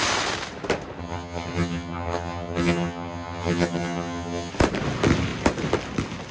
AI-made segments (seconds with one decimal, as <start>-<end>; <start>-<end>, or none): 1.0-4.5